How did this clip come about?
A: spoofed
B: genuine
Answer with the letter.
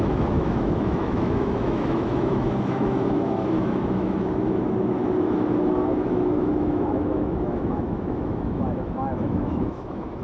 A